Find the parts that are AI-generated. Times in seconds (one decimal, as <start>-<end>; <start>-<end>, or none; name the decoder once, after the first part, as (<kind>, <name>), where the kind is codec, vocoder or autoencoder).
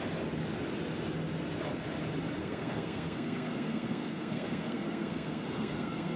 2.4-6.2 (codec, SNAC)